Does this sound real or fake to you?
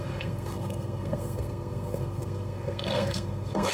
fake